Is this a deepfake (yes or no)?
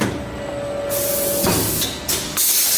no